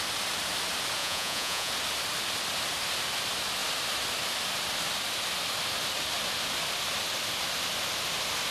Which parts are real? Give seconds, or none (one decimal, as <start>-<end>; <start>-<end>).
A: 0.0-1.0; 1.7-8.5